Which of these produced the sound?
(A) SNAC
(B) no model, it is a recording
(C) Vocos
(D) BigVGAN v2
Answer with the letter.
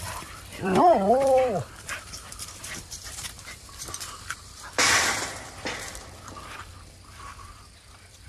D